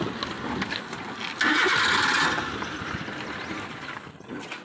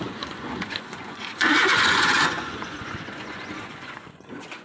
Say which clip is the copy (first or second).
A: second